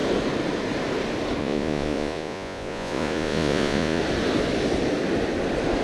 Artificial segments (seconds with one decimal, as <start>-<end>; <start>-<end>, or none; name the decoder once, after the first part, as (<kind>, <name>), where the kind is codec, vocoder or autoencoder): 1.4-4.0 (vocoder, Vocos)